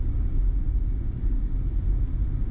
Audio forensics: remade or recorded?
recorded